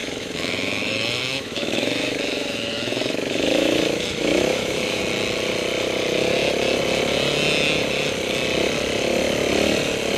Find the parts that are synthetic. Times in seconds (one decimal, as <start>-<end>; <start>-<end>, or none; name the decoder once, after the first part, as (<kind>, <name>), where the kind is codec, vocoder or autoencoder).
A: 0.0-5.0 (autoencoder, DAC-VAE)